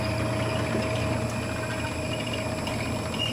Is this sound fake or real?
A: real